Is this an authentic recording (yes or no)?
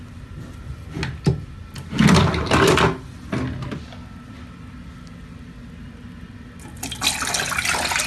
yes